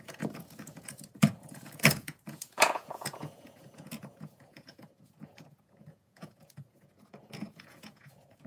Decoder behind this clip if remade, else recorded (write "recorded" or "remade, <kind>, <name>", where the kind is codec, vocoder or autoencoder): remade, vocoder, Vocos